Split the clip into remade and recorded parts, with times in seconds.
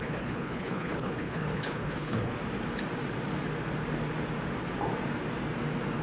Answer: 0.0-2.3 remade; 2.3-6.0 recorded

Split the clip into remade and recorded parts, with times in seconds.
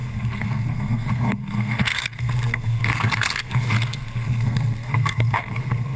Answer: 0.0-6.0 remade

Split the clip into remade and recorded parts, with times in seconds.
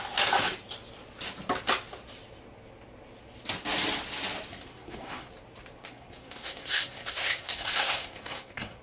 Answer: 0.0-4.5 recorded; 4.5-5.3 remade; 5.3-5.8 recorded; 5.8-8.8 remade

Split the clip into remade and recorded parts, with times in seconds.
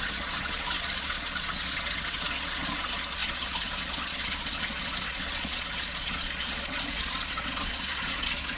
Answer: 0.0-8.6 remade